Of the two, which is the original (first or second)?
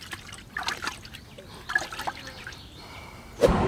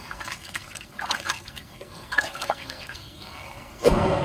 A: first